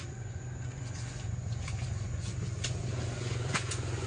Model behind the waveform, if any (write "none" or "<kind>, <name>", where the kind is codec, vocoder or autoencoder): vocoder, Vocos